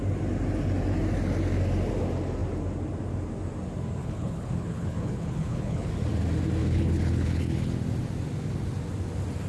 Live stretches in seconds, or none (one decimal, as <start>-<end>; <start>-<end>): 0.0-4.0; 5.9-6.6; 7.7-9.5

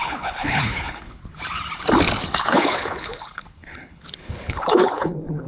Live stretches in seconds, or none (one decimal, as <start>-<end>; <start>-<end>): 1.2-2.4

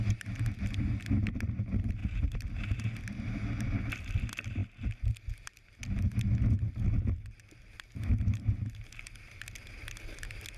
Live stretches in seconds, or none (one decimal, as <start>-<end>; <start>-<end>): 0.0-2.0; 2.9-10.6

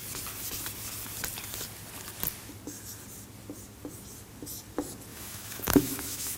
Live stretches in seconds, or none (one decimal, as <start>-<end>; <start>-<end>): 0.0-5.1